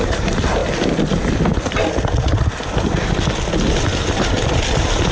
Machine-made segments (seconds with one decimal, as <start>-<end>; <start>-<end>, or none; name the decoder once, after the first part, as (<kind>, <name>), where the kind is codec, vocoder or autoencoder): 0.0-0.6 (vocoder, BigVGAN v2); 3.7-5.1